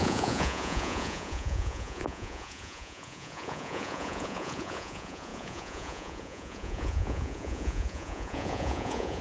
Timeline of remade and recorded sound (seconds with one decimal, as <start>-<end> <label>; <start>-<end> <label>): 0.0-9.2 remade